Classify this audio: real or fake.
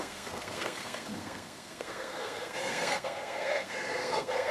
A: fake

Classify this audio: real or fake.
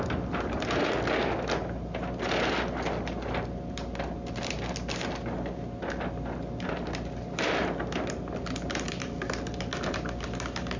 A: real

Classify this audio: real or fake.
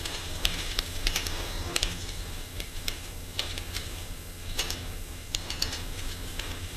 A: fake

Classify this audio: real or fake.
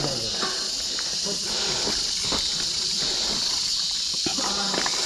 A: real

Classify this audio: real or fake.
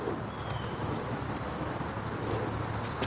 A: real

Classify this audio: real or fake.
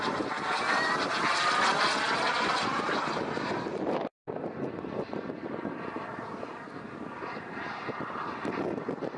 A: real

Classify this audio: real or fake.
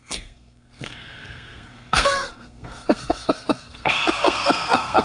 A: fake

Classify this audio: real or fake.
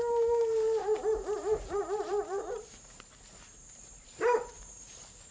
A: fake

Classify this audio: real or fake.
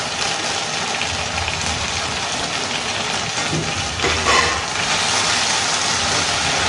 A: real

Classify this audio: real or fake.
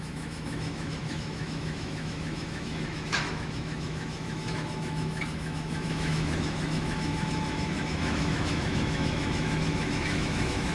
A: fake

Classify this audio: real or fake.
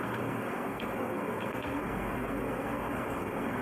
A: fake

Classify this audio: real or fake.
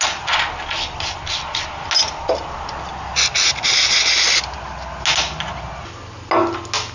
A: real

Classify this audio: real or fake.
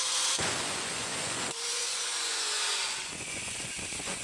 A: fake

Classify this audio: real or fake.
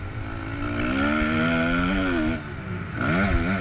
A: real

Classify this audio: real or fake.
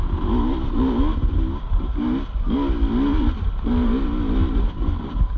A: real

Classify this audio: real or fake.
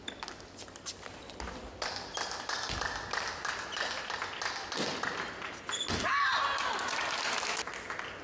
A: real